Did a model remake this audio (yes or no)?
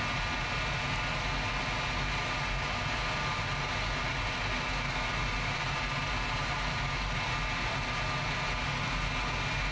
no